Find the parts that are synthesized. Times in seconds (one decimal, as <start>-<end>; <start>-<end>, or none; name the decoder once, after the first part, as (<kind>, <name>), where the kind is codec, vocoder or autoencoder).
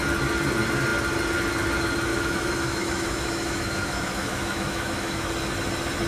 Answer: 2.1-5.3 (autoencoder, DAC-VAE)